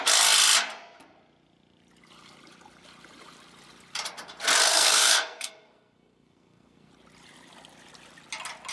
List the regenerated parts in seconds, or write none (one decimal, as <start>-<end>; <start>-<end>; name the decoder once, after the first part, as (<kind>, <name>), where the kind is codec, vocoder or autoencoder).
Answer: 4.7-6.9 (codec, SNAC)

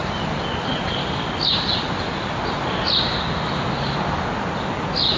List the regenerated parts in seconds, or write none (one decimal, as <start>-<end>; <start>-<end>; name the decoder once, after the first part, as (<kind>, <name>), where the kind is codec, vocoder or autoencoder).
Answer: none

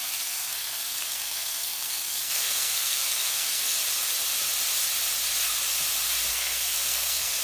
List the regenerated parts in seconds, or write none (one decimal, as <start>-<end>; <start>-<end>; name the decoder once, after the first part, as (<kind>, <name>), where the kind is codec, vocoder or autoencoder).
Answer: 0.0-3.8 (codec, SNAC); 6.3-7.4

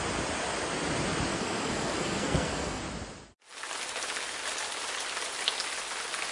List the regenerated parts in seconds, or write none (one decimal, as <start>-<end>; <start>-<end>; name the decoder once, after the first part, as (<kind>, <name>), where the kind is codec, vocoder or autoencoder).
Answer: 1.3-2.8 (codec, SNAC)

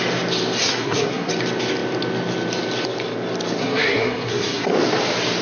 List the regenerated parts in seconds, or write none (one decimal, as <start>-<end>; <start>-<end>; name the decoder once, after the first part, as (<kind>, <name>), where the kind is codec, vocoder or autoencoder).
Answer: 0.6-1.3 (codec, SNAC); 3.6-4.7

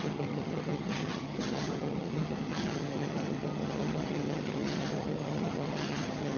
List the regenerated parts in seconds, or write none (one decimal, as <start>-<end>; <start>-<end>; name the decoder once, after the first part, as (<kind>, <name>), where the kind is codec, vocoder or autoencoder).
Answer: 0.0-6.4 (vocoder, HiFi-GAN)

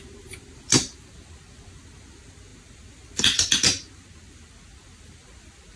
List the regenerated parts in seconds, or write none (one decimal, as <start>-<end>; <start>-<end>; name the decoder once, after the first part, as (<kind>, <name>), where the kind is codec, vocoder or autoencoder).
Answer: none